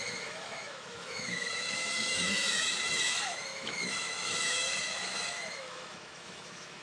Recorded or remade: remade